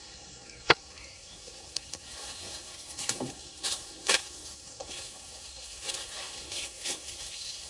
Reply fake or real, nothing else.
fake